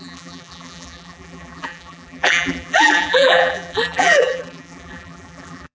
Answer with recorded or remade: remade